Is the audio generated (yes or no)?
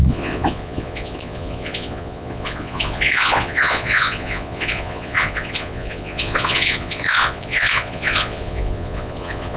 yes